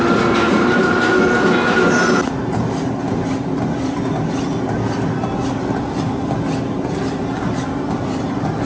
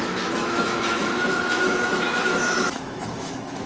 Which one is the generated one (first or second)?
second